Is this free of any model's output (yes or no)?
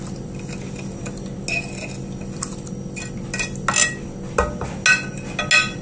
yes